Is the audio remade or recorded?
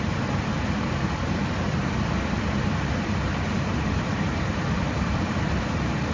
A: remade